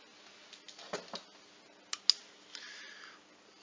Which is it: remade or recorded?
recorded